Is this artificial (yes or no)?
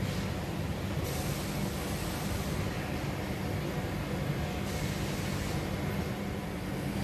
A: no